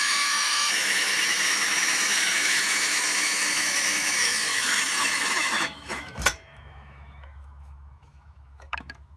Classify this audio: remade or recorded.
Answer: remade